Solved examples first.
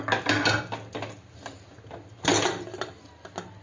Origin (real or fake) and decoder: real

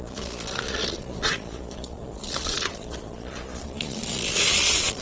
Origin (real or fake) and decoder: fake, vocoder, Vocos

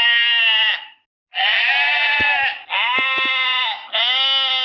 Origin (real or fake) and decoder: real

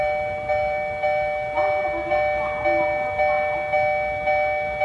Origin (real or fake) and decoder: real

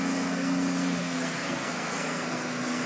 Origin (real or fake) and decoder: fake, codec, SNAC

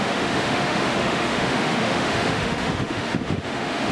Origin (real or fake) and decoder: fake, autoencoder, DAC-VAE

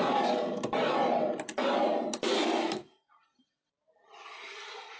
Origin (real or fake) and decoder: real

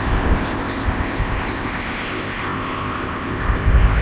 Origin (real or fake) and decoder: fake, codec, ZipCodec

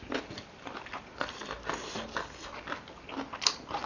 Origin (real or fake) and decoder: real